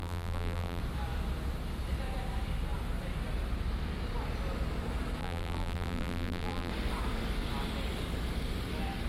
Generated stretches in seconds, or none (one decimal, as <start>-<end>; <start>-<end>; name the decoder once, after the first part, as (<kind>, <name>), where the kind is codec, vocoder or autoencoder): 0.0-0.8 (vocoder, BigVGAN v2); 5.2-6.7